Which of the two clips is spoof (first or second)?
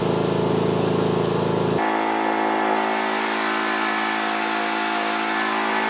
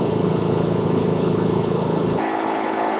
second